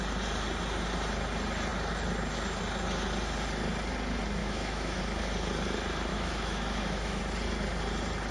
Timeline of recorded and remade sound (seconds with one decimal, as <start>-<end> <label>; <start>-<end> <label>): 0.0-4.4 recorded; 4.4-5.0 remade; 5.0-6.1 recorded; 6.1-7.2 remade; 7.2-8.3 recorded